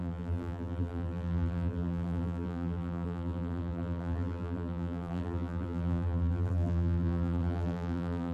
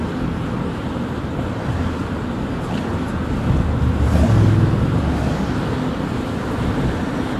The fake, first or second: first